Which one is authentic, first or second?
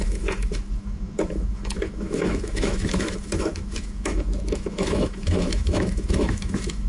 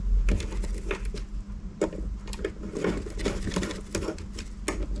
second